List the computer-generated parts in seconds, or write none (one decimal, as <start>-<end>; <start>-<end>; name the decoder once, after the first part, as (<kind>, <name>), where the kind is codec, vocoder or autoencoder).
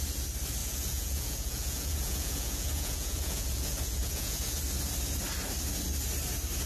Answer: 0.6-4.6 (vocoder, Vocos)